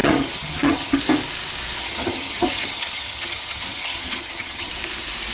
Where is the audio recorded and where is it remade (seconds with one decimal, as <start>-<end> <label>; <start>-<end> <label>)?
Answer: 0.0-1.0 remade; 1.0-1.8 recorded; 1.8-4.7 remade; 4.7-5.3 recorded